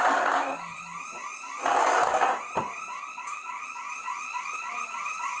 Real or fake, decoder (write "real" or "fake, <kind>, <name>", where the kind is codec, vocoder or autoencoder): real